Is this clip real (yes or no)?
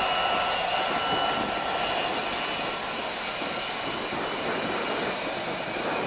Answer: yes